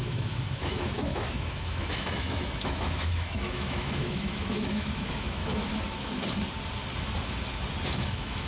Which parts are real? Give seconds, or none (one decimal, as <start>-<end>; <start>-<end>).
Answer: 5.7-8.1